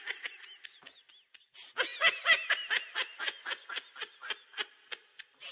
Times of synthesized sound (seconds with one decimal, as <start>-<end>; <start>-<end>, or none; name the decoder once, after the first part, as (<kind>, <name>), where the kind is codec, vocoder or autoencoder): 2.9-3.7 (vocoder, Vocos)